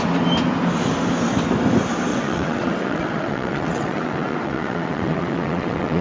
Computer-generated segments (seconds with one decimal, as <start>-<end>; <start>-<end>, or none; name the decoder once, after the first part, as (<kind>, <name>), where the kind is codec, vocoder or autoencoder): 2.1-6.0 (vocoder, WaveNeXt)